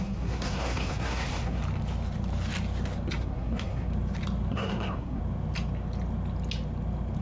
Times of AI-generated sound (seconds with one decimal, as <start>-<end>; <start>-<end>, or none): 0.0-1.6; 3.2-3.9; 4.5-5.2